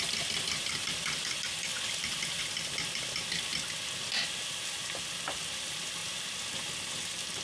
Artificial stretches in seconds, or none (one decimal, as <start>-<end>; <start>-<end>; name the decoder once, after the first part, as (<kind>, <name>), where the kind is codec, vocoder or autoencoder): none